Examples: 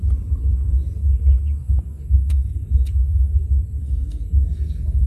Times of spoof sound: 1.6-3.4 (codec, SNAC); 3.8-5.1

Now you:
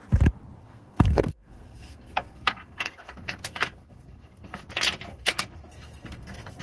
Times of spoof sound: 0.6-4.6 (codec, SNAC); 5.1-6.6

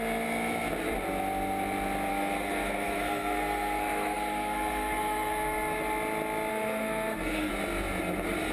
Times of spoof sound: 2.1-5.8 (codec, SNAC); 6.5-7.5